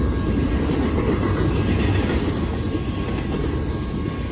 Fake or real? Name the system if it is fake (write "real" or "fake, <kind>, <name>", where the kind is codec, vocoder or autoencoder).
real